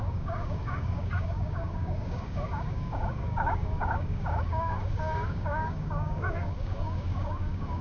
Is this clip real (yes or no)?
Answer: no